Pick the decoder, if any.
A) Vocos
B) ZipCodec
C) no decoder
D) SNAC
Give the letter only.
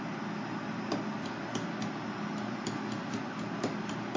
C